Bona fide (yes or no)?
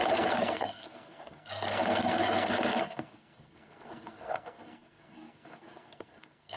no